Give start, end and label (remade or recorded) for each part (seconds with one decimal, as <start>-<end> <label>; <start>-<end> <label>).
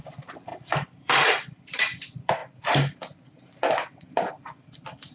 0.0-2.4 remade; 2.4-4.3 recorded; 4.3-5.1 remade